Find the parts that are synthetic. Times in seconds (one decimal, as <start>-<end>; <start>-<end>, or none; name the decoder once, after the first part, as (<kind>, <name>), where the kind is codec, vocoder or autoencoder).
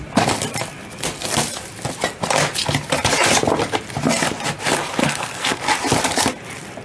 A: 5.0-5.6 (codec, SNAC)